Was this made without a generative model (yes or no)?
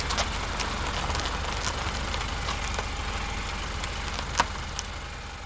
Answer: yes